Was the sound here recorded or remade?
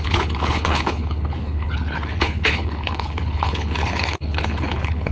remade